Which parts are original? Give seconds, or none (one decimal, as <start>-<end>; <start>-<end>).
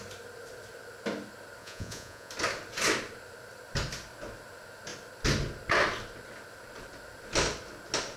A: 0.0-1.6; 2.3-8.2